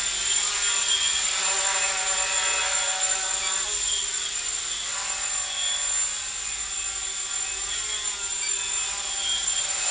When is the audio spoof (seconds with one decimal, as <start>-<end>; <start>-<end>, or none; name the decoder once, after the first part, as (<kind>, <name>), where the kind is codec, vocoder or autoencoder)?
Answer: 0.8-1.3 (vocoder, Vocos)